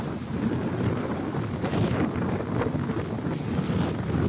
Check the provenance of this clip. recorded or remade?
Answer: recorded